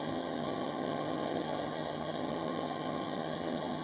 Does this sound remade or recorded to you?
remade